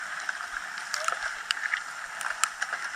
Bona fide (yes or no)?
yes